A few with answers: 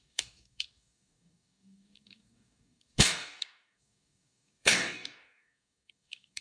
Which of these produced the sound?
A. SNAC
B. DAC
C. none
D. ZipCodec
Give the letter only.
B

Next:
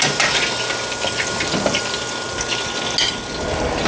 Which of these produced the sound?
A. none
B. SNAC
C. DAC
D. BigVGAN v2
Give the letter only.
A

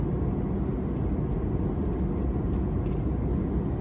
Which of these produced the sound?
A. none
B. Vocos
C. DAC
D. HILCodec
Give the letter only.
A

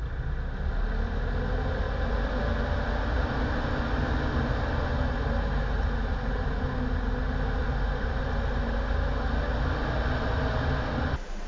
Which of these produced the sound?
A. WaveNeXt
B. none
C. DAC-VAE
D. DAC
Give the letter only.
B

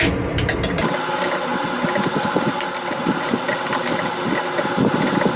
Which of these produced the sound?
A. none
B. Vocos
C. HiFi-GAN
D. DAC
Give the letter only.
A